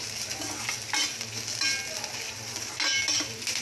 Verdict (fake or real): real